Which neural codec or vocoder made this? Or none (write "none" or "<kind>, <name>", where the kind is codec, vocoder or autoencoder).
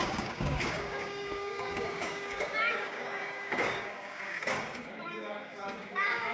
codec, DAC